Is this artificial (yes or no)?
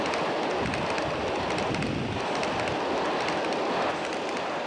no